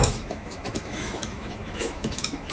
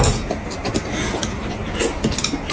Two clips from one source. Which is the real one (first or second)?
second